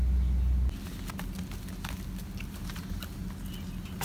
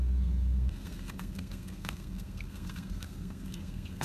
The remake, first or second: second